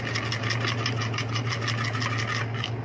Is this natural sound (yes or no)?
yes